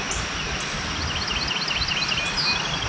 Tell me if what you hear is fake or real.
real